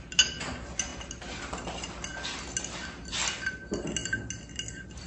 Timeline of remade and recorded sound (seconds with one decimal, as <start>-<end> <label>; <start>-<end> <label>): 0.0-5.1 recorded